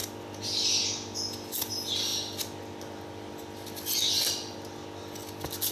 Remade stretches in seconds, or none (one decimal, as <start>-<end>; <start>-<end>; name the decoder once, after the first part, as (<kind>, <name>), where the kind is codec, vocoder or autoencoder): none